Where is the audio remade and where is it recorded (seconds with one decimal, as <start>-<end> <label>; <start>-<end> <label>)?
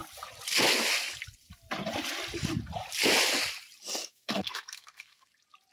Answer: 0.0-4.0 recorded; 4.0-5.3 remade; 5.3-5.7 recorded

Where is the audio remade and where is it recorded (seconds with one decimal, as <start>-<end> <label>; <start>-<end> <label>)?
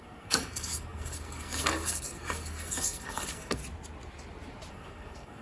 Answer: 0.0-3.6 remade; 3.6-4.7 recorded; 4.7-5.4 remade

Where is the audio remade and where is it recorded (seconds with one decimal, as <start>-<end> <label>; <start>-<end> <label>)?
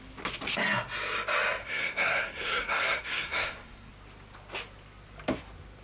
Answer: 0.0-1.6 recorded; 1.6-3.9 remade; 3.9-5.8 recorded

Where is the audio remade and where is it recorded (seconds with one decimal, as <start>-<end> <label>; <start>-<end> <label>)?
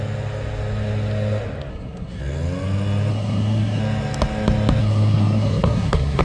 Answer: 0.0-1.7 recorded; 1.7-2.2 remade; 2.2-3.1 recorded; 3.1-3.8 remade; 3.8-4.8 recorded; 4.8-6.2 remade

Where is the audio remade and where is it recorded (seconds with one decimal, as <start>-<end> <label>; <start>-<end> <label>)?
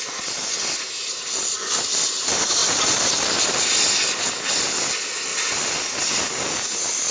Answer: 0.0-7.1 recorded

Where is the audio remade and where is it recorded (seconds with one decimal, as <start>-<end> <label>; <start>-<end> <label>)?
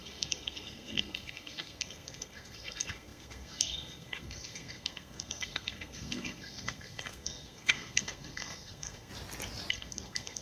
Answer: 0.0-9.1 remade; 9.1-9.7 recorded; 9.7-10.4 remade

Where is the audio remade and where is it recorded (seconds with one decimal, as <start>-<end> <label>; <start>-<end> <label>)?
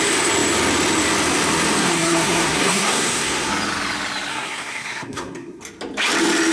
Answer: 0.0-1.8 recorded; 1.8-3.5 remade; 3.5-4.3 recorded; 4.3-5.6 remade; 5.6-6.5 recorded